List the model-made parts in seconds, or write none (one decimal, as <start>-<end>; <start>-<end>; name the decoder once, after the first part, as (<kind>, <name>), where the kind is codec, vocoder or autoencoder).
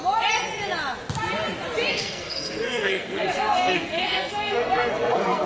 1.9-5.5 (codec, SNAC)